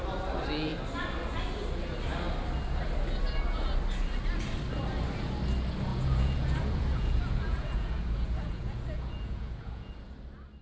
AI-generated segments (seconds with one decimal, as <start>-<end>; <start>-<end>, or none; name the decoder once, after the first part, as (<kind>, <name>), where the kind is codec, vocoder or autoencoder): 5.9-9.9 (vocoder, Vocos)